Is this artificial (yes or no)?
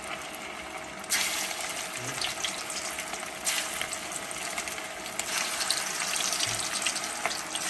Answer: no